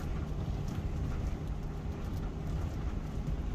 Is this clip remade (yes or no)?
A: no